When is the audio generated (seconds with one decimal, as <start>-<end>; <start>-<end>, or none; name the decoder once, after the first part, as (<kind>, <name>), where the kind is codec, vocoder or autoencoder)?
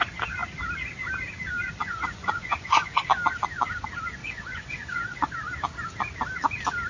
1.8-3.0 (vocoder, Vocos); 4.2-5.3